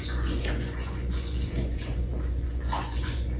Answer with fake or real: fake